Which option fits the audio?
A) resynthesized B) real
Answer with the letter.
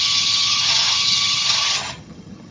A